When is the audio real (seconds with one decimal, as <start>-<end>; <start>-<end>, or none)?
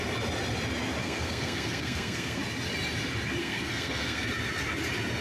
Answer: 0.0-1.0; 2.4-3.4; 4.3-5.2